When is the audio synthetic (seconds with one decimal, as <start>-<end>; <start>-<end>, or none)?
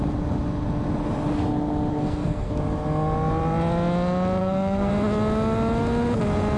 1.9-2.5; 4.4-4.9